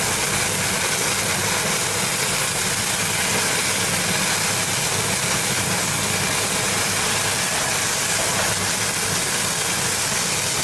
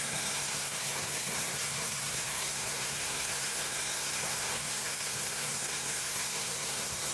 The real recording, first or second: first